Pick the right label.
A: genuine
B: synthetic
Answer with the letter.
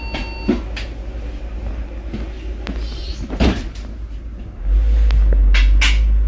A